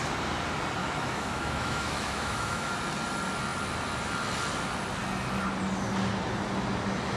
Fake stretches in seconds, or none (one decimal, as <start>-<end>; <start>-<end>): 0.8-2.7